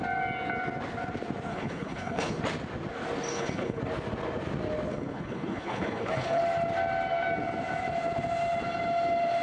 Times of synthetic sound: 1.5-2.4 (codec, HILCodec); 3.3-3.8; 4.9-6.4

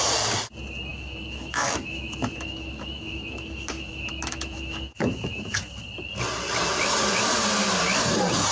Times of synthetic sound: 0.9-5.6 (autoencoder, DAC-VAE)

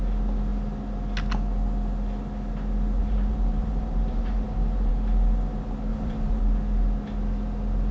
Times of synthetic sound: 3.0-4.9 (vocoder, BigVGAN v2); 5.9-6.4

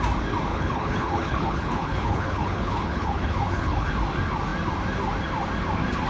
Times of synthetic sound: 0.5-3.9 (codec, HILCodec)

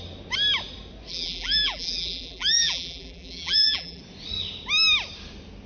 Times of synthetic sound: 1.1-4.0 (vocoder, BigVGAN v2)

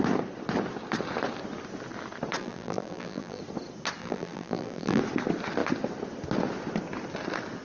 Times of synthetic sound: 2.4-3.4 (vocoder, BigVGAN v2); 4.0-5.0

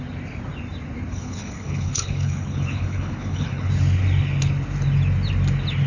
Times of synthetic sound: 1.1-3.7 (codec, HILCodec)